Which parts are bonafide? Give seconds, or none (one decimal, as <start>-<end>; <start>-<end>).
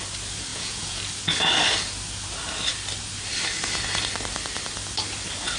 0.0-0.5; 1.0-5.6